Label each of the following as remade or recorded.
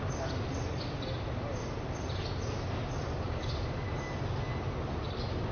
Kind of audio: recorded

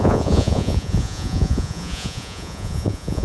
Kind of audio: remade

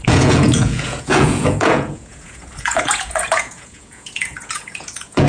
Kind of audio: remade